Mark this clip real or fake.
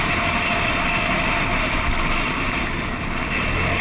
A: real